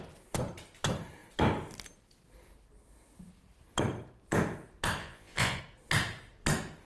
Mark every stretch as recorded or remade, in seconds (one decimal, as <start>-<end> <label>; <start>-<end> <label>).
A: 0.0-5.0 recorded; 5.0-5.6 remade; 5.6-6.8 recorded